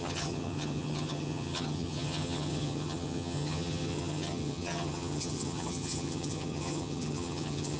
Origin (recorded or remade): remade